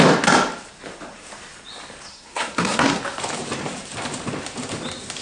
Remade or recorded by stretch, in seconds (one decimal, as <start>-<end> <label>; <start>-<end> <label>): 0.0-2.1 recorded; 2.1-3.0 remade; 3.0-5.2 recorded